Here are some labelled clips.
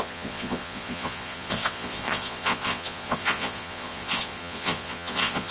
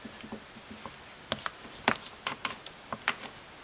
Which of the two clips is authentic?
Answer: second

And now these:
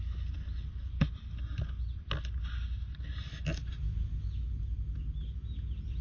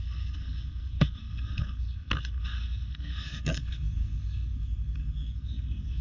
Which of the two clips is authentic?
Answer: first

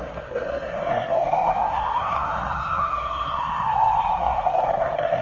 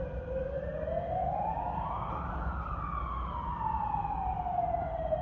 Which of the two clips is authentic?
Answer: second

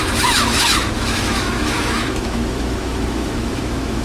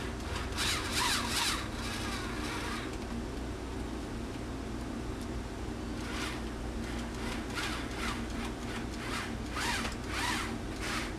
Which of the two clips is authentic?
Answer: second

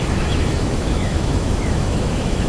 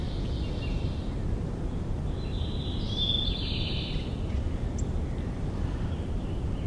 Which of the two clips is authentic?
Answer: second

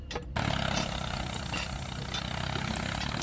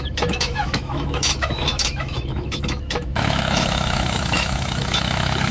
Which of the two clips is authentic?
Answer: first